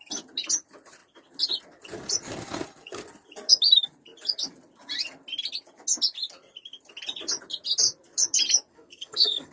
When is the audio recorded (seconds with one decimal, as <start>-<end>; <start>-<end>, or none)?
0.0-8.7